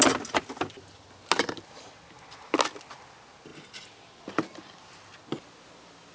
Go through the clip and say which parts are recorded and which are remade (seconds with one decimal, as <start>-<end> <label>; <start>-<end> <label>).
0.0-6.1 recorded